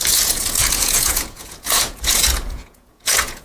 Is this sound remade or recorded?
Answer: remade